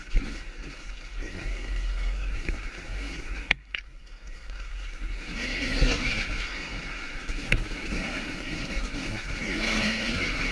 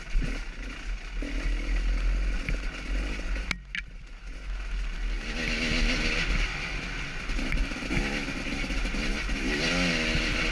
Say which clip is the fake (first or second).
first